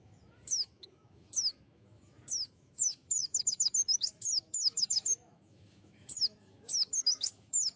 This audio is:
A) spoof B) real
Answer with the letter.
A